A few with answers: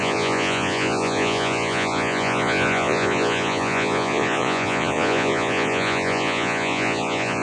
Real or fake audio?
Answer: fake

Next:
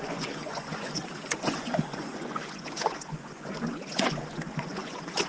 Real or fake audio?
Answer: fake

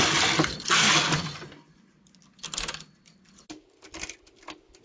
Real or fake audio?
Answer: real